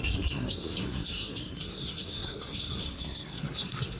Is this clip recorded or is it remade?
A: remade